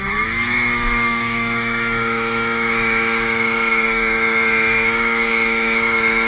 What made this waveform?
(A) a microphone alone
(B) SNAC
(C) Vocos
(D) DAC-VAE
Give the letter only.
D